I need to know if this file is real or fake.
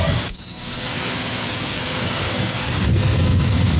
fake